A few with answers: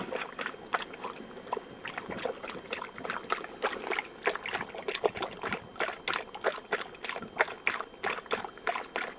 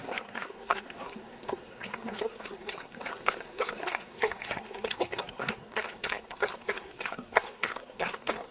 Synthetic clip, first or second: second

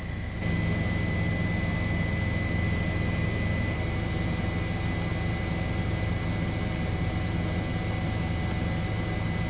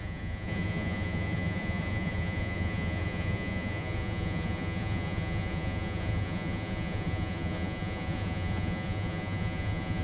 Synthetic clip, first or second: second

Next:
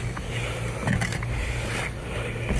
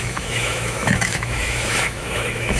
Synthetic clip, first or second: second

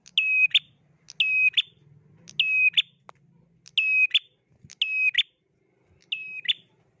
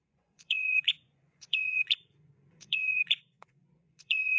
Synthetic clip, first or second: second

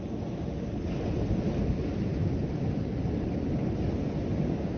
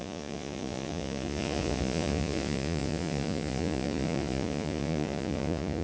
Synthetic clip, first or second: second